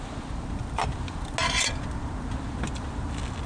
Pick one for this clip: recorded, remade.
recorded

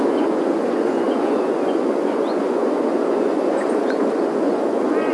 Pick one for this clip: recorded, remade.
remade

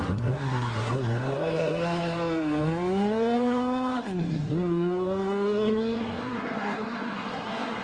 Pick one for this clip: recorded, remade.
remade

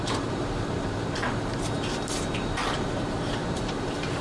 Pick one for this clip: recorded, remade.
remade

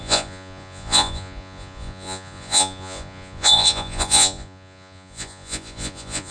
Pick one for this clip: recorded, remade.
remade